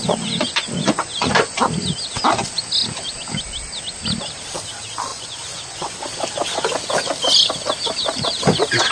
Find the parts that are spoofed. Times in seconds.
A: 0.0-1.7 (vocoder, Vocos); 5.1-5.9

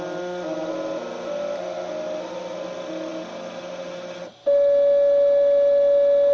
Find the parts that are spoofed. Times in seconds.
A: none

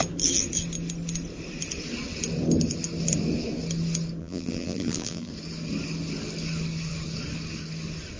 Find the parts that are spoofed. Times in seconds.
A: 4.2-5.3 (vocoder, BigVGAN v2)

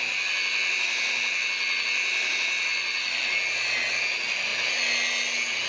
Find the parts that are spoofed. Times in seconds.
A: none

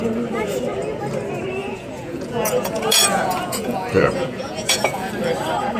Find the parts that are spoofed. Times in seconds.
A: 1.6-5.1 (vocoder, Vocos)

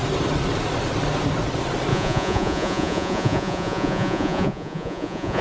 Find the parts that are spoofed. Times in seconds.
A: 1.9-5.4 (vocoder, Vocos)

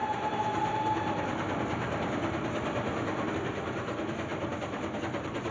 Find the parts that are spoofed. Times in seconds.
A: none